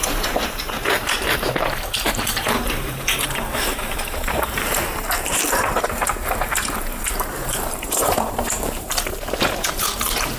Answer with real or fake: fake